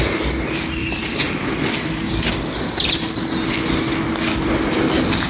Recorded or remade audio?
recorded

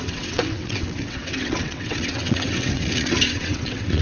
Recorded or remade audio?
remade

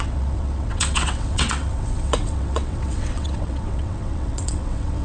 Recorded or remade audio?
remade